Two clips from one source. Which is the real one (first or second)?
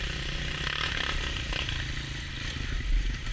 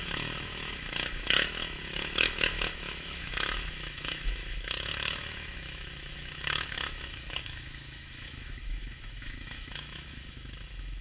first